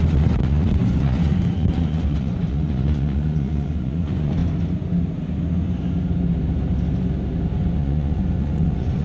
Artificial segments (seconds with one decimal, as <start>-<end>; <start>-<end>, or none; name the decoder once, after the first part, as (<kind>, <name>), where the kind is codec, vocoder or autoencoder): 0.0-4.4 (vocoder, Vocos); 7.6-9.0